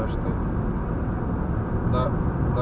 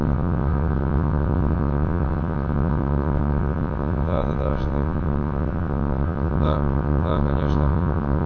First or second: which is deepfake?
second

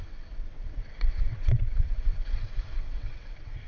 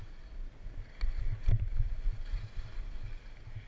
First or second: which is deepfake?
first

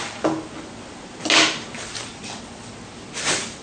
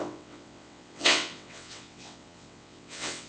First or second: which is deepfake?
second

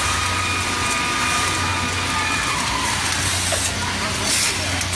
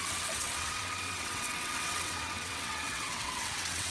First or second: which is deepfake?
second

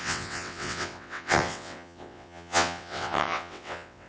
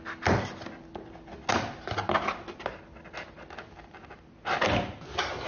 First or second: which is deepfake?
first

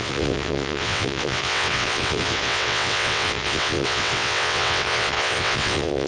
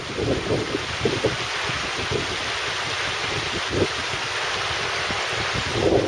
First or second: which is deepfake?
first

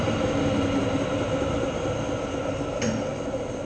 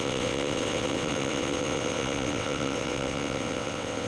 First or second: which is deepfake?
second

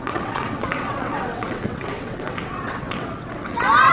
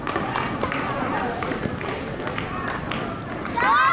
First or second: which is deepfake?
first